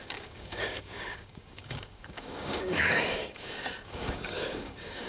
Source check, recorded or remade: remade